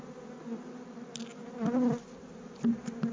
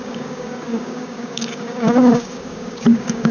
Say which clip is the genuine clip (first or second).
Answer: first